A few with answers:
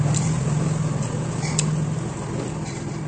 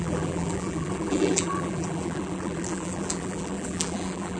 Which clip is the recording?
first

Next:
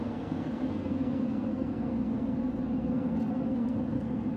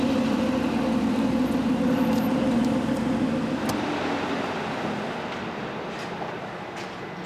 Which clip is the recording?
second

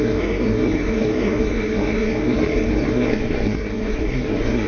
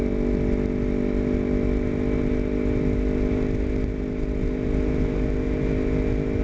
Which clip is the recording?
second